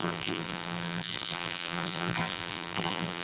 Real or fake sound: fake